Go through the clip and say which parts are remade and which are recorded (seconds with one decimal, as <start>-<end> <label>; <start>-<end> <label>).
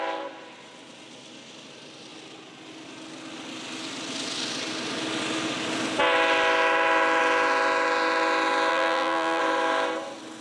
0.0-8.7 recorded; 8.7-9.4 remade; 9.4-10.4 recorded